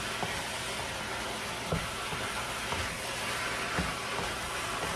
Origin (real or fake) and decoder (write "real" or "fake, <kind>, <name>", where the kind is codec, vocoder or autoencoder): real